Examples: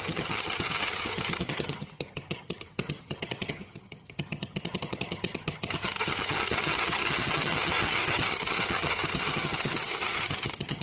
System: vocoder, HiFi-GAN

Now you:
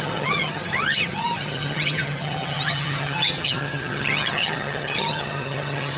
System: vocoder, HiFi-GAN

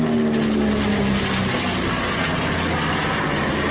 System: none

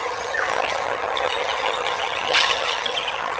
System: vocoder, HiFi-GAN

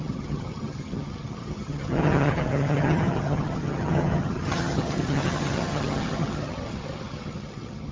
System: vocoder, HiFi-GAN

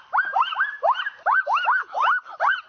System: none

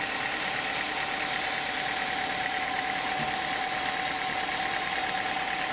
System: none